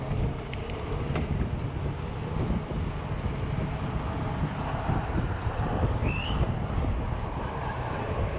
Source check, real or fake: real